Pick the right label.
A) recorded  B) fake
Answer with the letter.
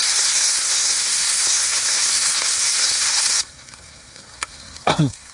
B